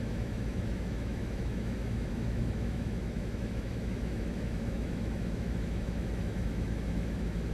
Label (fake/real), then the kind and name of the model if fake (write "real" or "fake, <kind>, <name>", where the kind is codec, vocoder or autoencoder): fake, autoencoder, DAC-VAE